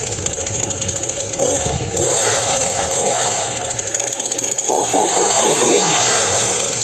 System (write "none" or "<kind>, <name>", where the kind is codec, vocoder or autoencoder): codec, SNAC